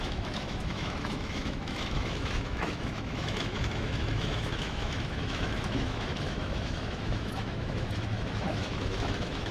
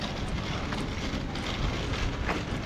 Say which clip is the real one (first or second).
second